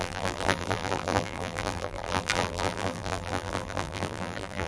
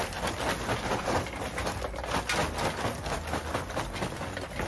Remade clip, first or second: first